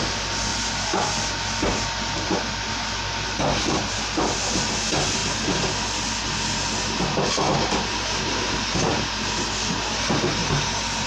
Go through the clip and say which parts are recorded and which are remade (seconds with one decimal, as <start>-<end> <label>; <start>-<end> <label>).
0.0-11.1 recorded